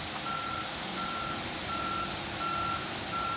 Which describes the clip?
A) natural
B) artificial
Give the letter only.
A